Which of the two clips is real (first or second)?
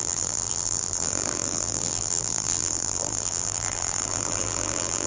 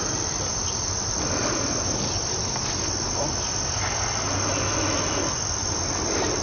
second